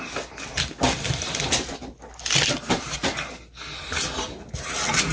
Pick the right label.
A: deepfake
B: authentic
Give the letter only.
B